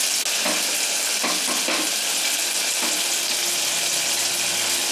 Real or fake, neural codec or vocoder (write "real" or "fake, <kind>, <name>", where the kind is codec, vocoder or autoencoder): real